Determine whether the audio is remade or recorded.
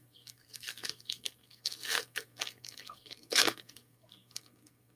remade